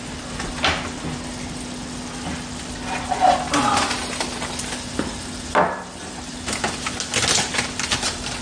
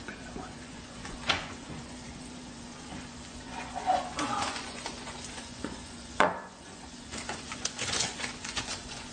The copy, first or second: second